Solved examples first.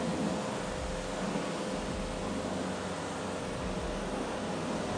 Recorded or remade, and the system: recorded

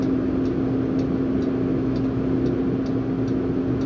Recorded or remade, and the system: recorded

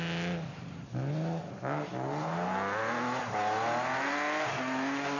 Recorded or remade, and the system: recorded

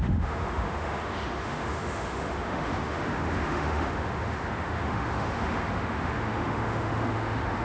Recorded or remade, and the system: remade, autoencoder, DAC-VAE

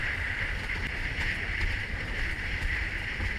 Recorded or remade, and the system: remade, vocoder, BigVGAN v2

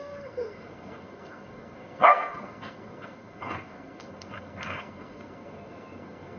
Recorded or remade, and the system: remade, codec, SNAC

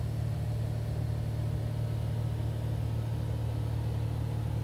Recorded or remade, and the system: recorded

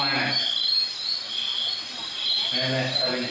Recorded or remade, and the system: recorded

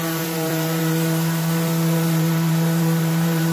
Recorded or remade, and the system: remade, vocoder, BigVGAN v2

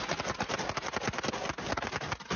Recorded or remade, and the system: recorded